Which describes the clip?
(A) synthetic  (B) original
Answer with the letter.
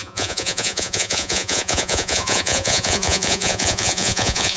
A